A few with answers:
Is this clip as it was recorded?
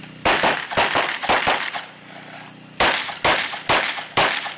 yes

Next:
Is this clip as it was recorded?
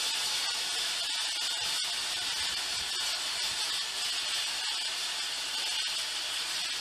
yes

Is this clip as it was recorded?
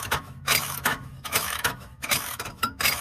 no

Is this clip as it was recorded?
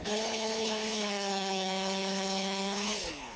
no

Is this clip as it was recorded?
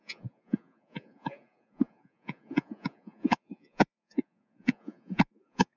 no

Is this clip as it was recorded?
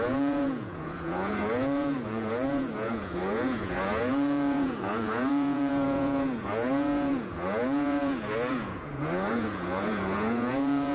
no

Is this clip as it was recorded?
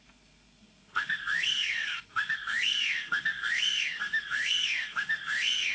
no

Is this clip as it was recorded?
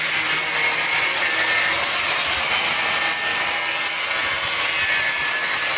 yes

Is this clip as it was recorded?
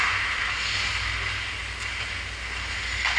yes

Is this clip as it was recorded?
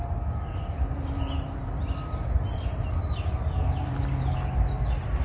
yes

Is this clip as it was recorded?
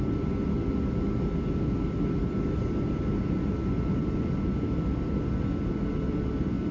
yes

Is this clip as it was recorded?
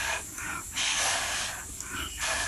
no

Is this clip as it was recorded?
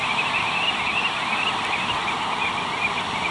yes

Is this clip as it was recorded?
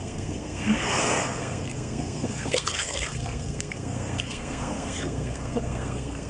no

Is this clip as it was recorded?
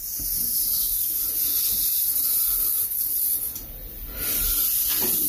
yes